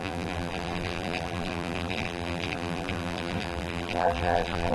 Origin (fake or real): fake